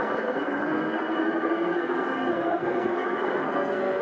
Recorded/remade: remade